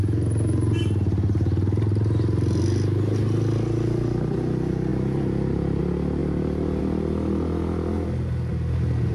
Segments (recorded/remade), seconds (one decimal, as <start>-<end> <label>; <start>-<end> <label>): 0.0-4.9 recorded; 4.9-5.8 remade; 5.8-6.2 recorded; 6.2-6.8 remade; 6.8-9.1 recorded